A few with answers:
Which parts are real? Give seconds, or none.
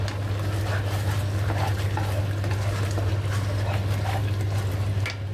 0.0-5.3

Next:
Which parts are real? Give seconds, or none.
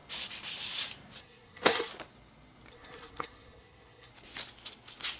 0.0-1.2; 1.9-2.7; 4.1-5.2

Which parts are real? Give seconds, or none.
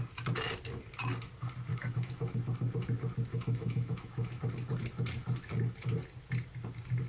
0.0-1.7; 2.2-3.3; 4.4-7.1